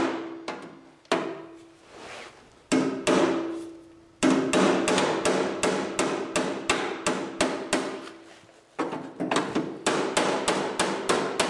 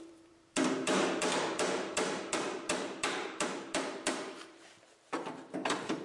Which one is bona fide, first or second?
first